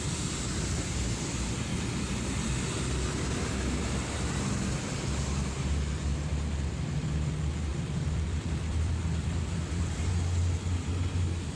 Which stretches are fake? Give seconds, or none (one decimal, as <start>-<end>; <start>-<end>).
7.7-10.1